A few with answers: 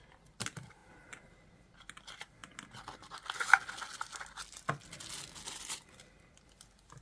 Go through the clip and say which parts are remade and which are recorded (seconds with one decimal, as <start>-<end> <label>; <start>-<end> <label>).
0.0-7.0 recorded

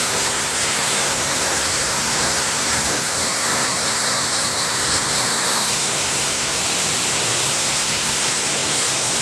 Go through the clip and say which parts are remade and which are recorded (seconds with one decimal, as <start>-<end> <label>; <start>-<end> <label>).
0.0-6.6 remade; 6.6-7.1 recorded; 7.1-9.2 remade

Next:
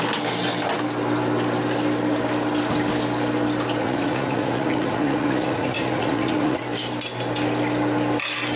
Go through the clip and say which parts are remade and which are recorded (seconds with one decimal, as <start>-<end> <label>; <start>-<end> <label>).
0.0-3.8 recorded; 3.8-6.6 remade; 6.6-8.6 recorded

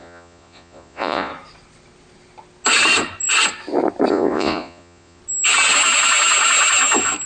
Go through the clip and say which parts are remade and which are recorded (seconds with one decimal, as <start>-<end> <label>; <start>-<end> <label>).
0.0-1.3 remade; 1.3-4.1 recorded; 4.1-5.2 remade; 5.2-7.3 recorded

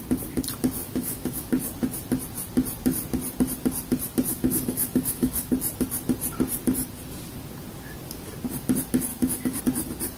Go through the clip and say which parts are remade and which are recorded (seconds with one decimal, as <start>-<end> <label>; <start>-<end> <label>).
0.0-0.8 recorded; 0.8-1.5 remade; 1.5-4.3 recorded; 4.3-5.5 remade; 5.5-9.1 recorded; 9.1-9.6 remade; 9.6-10.2 recorded

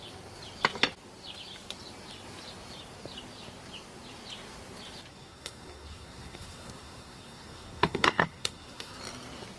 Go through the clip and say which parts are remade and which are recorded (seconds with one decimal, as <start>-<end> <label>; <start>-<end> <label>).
0.0-5.1 recorded; 5.1-9.0 remade; 9.0-9.6 recorded